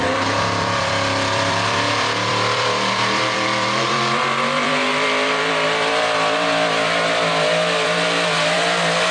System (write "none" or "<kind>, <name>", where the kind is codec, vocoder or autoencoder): vocoder, BigVGAN v2